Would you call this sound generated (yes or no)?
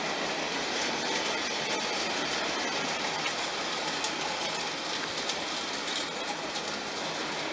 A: no